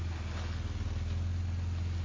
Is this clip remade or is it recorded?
recorded